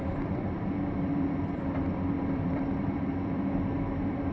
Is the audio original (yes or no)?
no